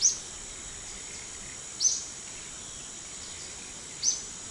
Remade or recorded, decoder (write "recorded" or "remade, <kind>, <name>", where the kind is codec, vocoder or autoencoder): recorded